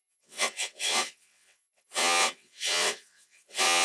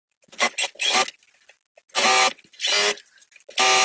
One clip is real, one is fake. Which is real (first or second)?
second